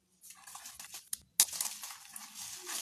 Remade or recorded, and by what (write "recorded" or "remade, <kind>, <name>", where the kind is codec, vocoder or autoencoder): recorded